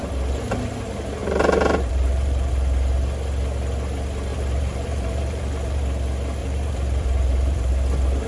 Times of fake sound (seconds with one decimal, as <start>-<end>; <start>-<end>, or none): 1.2-2.5; 4.3-5.8; 6.4-7.7